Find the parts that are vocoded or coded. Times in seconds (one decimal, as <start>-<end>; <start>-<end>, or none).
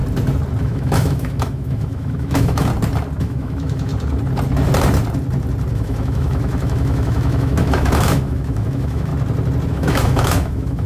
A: 0.6-2.7; 3.2-3.9; 5.7-9.1; 9.7-10.9